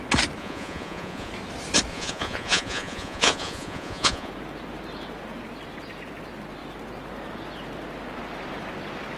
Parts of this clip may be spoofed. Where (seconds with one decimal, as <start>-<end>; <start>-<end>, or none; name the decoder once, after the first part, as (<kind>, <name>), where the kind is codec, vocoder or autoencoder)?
0.4-1.3 (vocoder, Vocos); 1.9-4.3